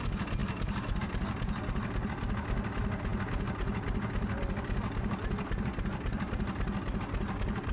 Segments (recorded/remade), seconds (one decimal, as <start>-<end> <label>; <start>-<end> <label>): 0.0-7.7 recorded